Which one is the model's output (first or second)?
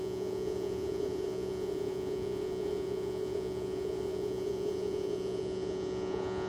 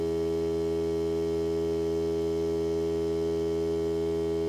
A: first